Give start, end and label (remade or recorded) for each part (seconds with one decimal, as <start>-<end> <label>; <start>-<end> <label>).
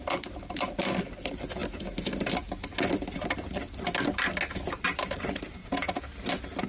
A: 0.0-5.6 recorded; 5.6-6.2 remade; 6.2-6.7 recorded